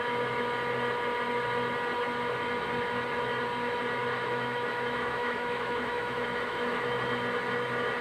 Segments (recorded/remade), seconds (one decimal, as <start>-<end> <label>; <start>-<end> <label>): 0.0-4.0 recorded; 4.0-6.9 remade; 6.9-8.0 recorded